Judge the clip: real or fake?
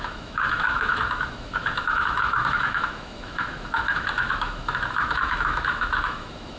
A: fake